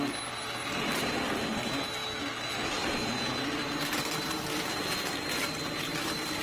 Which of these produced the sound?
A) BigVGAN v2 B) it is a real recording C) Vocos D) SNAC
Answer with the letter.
B